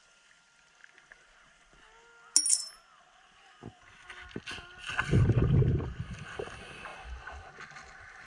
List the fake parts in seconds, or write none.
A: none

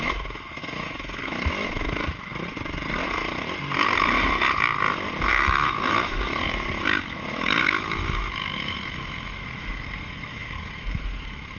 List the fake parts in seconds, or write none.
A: 0.0-2.3; 5.3-11.6

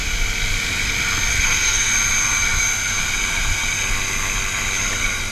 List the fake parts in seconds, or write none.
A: 1.3-1.9

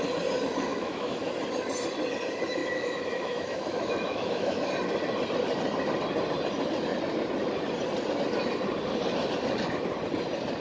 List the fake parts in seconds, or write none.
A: 0.7-1.3; 2.6-4.7

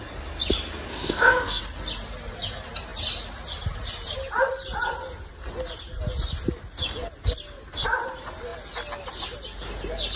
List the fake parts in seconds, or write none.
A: 0.9-1.6

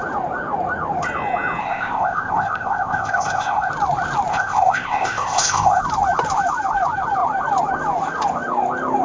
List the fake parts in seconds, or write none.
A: 1.6-3.7; 4.3-5.8

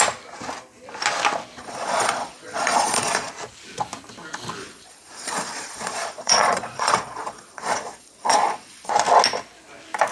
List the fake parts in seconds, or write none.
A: 1.6-3.3; 4.6-8.9

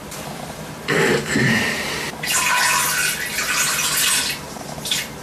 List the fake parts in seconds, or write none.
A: 0.0-1.8